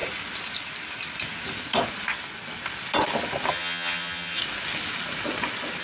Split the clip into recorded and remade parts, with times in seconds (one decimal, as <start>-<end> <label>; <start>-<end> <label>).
0.0-3.5 recorded; 3.5-4.4 remade; 4.4-5.8 recorded